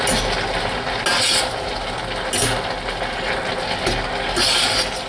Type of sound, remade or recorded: recorded